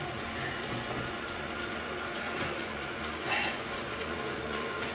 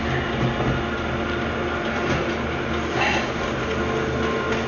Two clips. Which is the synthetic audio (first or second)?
first